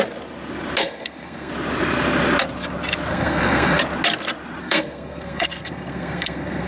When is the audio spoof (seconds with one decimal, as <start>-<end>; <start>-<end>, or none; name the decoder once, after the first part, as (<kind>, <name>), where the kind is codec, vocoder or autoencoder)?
0.8-1.5 (codec, SNAC); 3.1-3.8; 4.6-6.7